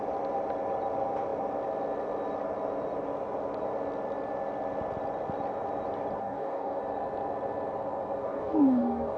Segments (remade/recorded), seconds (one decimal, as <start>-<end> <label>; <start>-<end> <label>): 0.0-6.2 recorded; 6.2-6.8 remade; 6.8-8.2 recorded; 8.2-9.2 remade